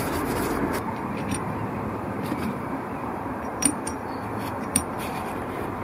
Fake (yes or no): yes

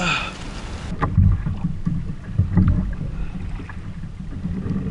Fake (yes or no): no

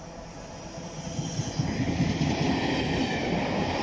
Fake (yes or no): no